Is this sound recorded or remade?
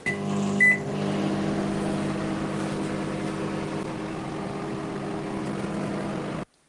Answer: recorded